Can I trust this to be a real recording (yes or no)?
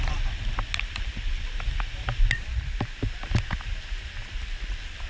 yes